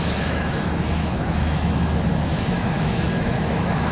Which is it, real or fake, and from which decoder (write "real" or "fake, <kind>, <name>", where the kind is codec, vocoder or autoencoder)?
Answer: fake, autoencoder, DAC-VAE